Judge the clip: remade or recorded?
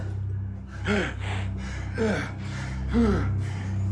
recorded